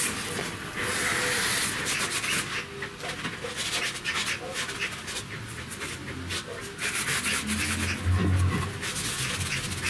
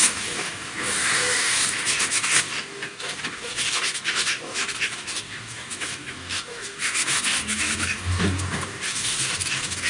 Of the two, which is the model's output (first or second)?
second